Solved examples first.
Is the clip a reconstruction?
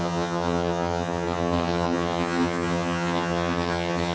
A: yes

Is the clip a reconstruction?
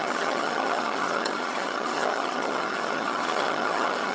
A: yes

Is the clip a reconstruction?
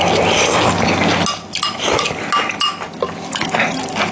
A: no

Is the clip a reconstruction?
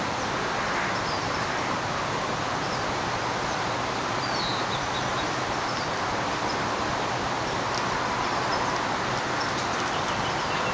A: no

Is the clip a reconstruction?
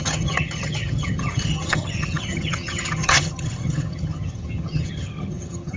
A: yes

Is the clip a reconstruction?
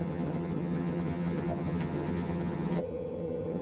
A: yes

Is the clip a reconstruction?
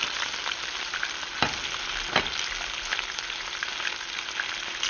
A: no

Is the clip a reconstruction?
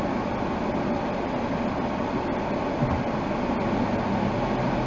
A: no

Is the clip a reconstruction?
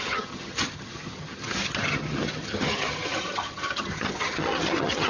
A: yes